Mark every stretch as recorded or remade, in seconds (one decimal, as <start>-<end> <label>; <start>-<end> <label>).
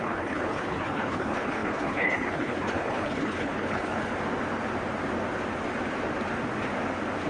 0.0-4.1 remade; 4.1-7.3 recorded